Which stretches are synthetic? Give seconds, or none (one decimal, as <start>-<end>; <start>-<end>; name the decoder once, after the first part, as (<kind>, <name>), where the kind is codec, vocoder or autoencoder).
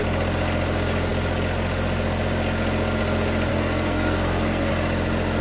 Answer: 3.5-4.7 (codec, SNAC)